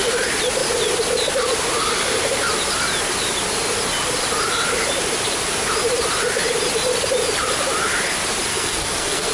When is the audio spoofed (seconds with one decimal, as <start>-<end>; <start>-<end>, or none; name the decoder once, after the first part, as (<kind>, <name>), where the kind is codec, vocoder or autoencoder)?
8.5-9.3 (codec, SNAC)